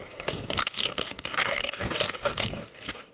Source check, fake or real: fake